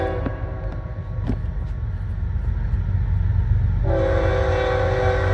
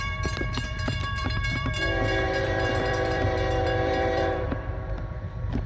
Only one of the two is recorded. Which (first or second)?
first